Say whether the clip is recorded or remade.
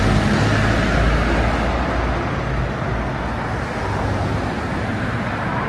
recorded